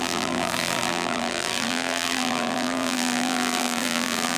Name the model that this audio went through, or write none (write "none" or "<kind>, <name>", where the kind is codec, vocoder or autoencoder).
vocoder, BigVGAN v2